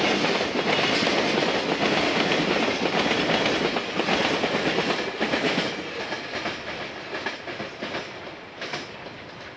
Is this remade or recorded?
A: recorded